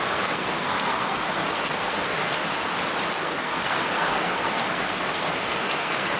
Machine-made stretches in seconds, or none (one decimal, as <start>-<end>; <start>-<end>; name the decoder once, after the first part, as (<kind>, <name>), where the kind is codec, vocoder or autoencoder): 0.0-2.4 (codec, SNAC); 3.1-6.2